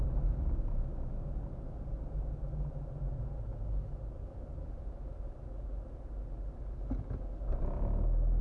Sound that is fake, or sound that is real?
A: real